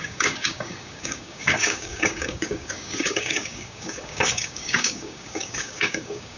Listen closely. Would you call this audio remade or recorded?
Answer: remade